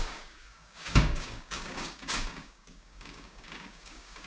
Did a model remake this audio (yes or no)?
yes